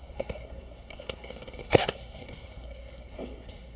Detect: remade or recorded remade